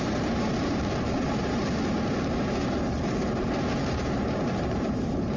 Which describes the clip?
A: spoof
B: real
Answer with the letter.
A